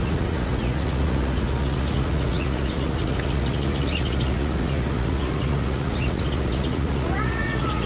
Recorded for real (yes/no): no